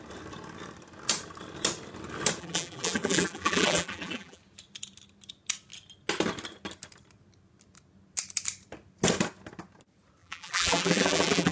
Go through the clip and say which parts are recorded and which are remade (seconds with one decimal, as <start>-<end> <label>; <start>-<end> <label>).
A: 0.0-2.4 recorded; 2.4-4.4 remade; 4.4-10.2 recorded; 10.2-11.5 remade